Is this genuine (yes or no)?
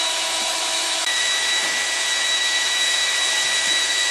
no